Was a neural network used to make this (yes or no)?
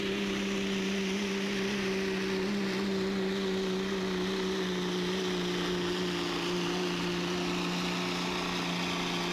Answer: no